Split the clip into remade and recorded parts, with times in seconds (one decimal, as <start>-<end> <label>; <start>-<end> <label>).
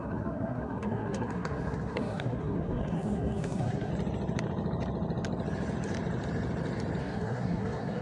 0.0-3.9 remade; 3.9-7.0 recorded; 7.0-8.0 remade